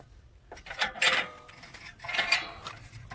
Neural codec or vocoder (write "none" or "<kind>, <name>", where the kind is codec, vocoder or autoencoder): none